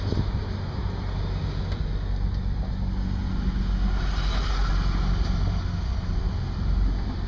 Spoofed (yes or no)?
no